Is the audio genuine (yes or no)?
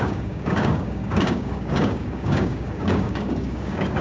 no